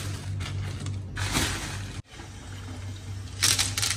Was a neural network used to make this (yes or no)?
no